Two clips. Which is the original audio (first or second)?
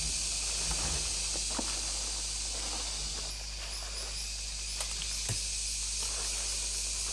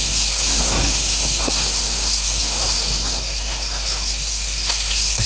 first